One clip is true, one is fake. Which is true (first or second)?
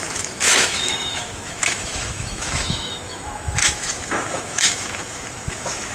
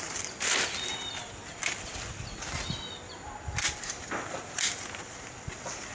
second